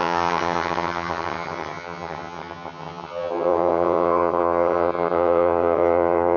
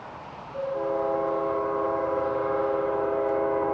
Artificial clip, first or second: first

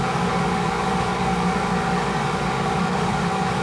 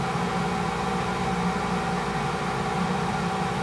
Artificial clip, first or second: first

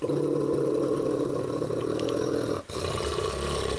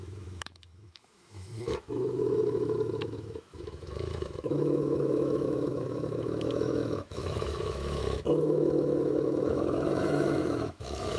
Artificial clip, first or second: second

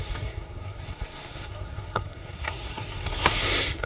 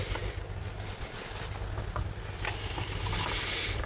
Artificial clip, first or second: first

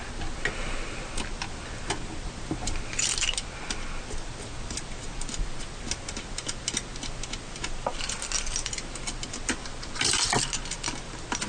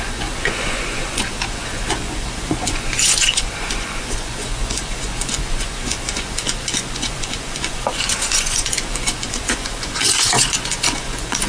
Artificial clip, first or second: second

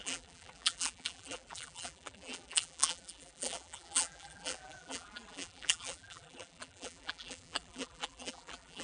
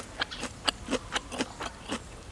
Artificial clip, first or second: first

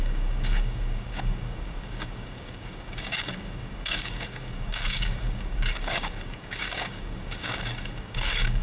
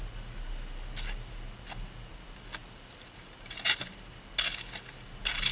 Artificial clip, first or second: first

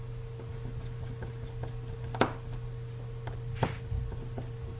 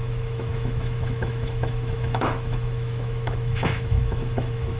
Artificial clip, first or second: second